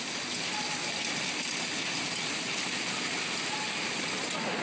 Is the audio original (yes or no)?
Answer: yes